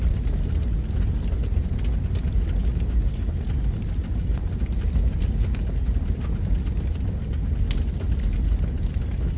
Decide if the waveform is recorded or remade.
recorded